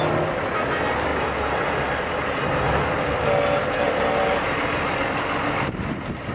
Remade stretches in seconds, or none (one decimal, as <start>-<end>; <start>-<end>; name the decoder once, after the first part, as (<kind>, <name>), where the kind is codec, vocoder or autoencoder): none